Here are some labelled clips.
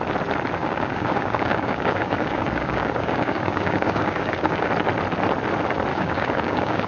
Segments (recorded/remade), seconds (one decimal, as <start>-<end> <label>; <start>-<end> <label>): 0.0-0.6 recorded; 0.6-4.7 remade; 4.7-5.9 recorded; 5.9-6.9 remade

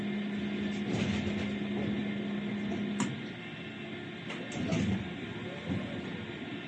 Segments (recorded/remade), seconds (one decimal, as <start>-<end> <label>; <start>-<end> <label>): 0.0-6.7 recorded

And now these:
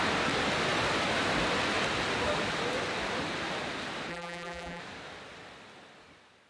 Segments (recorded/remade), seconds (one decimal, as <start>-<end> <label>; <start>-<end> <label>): 0.0-4.1 recorded; 4.1-4.8 remade; 4.8-6.5 recorded

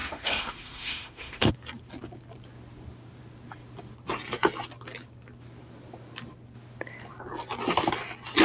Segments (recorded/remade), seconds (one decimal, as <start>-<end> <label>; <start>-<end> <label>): 0.0-1.5 remade; 1.5-8.4 recorded

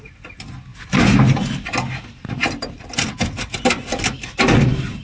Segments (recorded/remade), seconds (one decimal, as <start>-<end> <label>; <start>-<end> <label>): 0.0-0.7 recorded; 0.7-1.3 remade; 1.3-2.4 recorded; 2.4-2.9 remade; 2.9-5.0 recorded

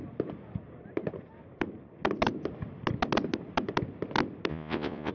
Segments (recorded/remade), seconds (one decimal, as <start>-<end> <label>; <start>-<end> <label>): 0.0-4.5 recorded; 4.5-5.1 remade

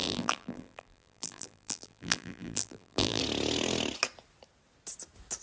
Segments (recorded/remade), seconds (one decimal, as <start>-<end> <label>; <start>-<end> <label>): 0.0-3.2 remade; 3.2-5.4 recorded

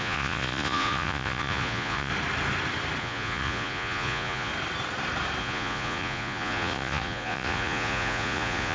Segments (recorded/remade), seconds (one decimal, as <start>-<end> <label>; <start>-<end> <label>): 0.0-2.1 remade; 2.1-3.0 recorded; 3.0-4.5 remade; 4.5-5.4 recorded; 5.4-8.7 remade